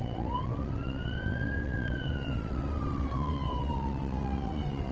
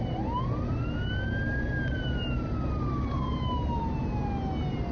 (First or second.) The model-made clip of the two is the first